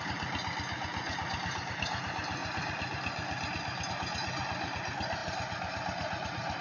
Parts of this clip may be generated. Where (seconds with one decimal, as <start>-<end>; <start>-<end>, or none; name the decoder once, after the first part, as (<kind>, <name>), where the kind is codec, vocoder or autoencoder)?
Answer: none